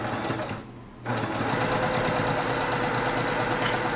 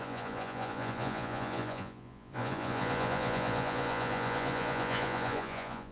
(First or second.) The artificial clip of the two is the second